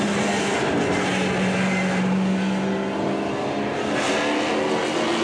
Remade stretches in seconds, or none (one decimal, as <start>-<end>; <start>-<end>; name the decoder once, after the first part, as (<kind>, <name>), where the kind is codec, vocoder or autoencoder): none